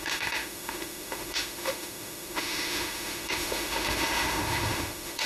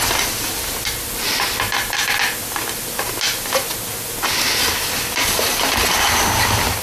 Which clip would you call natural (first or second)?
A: second